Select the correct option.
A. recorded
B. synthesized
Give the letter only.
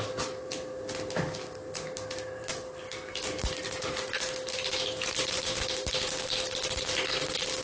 A